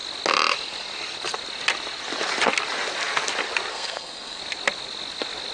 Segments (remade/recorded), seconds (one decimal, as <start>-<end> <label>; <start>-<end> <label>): 0.0-3.7 recorded; 3.7-4.4 remade; 4.4-5.5 recorded